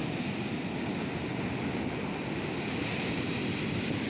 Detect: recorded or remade recorded